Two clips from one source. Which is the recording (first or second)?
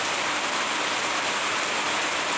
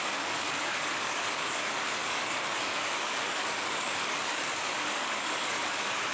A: first